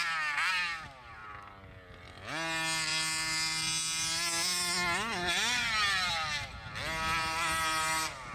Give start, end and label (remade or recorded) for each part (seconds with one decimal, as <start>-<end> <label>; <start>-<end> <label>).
0.0-8.3 recorded